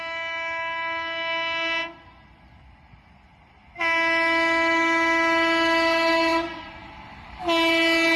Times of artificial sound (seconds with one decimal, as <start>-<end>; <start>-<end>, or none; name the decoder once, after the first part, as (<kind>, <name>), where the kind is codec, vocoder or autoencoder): 6.3-7.4 (vocoder, BigVGAN v2)